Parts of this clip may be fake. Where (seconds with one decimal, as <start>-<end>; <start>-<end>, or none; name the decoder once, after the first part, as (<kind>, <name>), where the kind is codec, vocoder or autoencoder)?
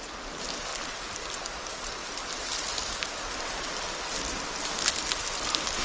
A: none